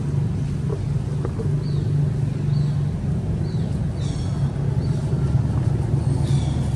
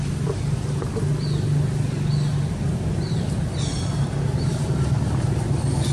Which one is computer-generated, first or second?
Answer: second